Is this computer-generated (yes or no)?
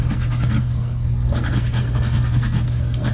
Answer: yes